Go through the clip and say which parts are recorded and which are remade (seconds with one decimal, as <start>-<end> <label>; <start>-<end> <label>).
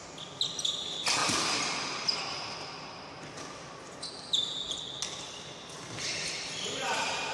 0.0-7.3 recorded